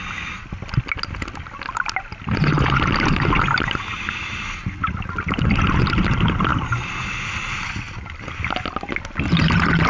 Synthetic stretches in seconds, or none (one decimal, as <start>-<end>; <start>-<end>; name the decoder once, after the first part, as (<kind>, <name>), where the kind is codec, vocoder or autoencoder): none